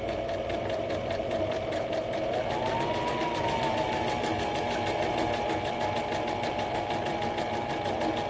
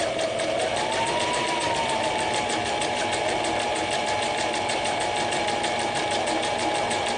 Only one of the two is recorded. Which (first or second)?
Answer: first